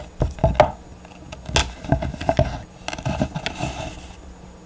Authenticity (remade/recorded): recorded